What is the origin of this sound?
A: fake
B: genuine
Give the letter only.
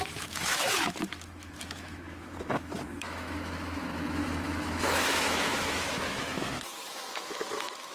A